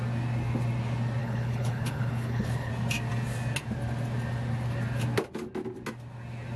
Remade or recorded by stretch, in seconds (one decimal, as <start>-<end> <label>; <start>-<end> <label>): 0.0-1.2 recorded; 1.2-2.7 remade; 2.7-6.6 recorded